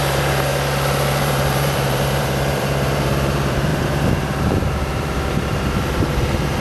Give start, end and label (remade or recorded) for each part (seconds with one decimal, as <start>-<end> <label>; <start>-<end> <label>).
0.0-0.5 remade; 0.5-1.2 recorded; 1.2-6.6 remade